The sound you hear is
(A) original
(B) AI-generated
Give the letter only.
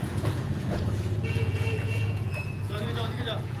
B